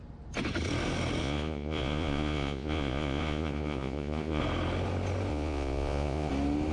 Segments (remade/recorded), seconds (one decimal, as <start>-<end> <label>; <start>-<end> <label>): 0.0-1.2 recorded; 1.2-4.4 remade; 4.4-5.3 recorded; 5.3-6.3 remade; 6.3-6.7 recorded